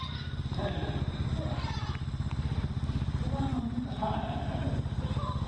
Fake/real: real